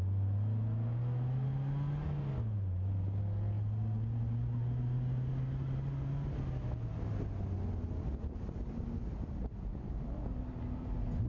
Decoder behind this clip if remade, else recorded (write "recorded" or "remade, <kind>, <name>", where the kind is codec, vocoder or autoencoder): recorded